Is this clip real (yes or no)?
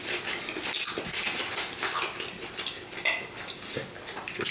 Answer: yes